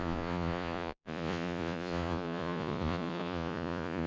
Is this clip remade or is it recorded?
remade